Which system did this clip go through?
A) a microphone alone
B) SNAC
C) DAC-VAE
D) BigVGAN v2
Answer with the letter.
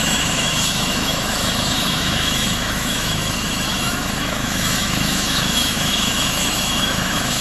C